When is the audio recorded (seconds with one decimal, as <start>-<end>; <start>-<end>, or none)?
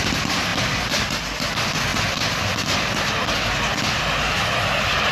0.0-5.1